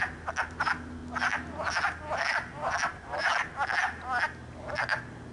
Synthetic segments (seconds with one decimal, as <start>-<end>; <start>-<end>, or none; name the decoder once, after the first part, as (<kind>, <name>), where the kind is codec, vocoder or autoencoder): none